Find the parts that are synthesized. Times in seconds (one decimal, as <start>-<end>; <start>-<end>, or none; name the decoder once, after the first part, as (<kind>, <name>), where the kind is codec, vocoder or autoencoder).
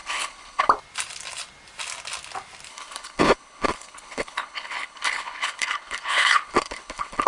0.0-0.7 (codec, HILCodec); 2.7-7.3